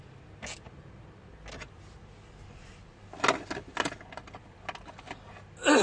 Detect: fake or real real